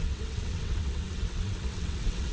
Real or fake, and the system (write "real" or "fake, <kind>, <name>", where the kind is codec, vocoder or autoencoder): fake, vocoder, WaveNeXt